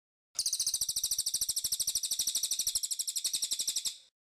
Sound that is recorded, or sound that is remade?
recorded